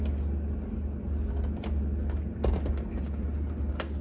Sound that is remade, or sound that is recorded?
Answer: recorded